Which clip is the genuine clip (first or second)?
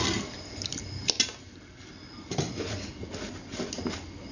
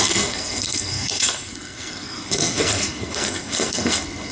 first